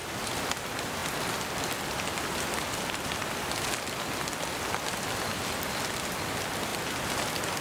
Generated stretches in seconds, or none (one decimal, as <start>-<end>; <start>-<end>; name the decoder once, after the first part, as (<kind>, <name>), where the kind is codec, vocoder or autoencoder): 0.0-7.6 (vocoder, BigVGAN v2)